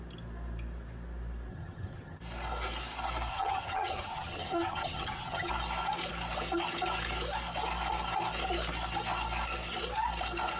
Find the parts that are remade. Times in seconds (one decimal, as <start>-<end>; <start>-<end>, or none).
1.5-2.2; 3.3-5.5